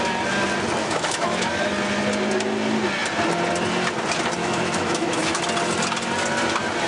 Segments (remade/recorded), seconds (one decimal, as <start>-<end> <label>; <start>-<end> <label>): 0.0-0.8 recorded; 0.8-1.5 remade; 1.5-4.4 recorded; 4.4-5.4 remade; 5.4-6.9 recorded